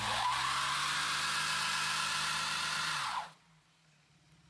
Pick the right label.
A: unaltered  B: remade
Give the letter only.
A